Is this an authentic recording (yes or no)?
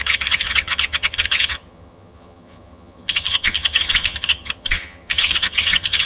no